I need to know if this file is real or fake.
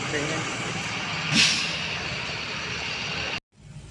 real